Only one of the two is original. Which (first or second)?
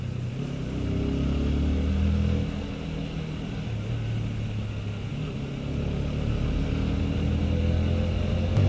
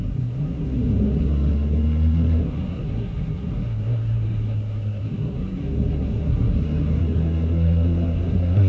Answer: first